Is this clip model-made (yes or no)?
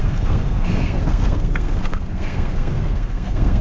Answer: yes